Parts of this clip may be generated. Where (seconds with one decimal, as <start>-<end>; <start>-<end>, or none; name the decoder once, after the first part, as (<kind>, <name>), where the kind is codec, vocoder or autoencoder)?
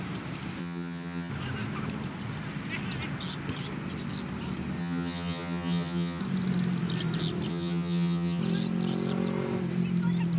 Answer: 0.6-1.3 (vocoder, HiFi-GAN); 4.8-6.2; 7.5-8.4